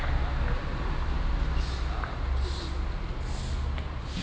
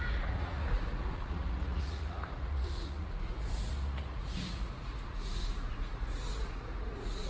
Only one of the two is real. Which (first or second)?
first